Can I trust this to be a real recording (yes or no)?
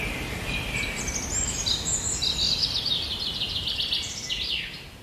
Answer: yes